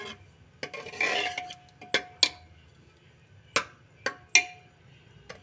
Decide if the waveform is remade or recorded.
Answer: recorded